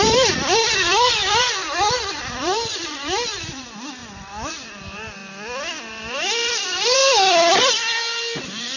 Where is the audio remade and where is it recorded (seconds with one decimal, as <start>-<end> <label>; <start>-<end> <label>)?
0.0-4.0 remade; 4.0-4.5 recorded; 4.5-5.2 remade; 5.2-5.9 recorded; 5.9-7.0 remade; 7.0-8.4 recorded; 8.4-8.8 remade